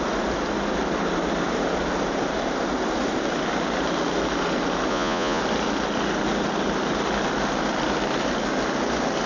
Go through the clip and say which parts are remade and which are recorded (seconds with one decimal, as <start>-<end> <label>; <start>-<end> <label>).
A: 0.0-4.9 recorded; 4.9-5.4 remade; 5.4-9.3 recorded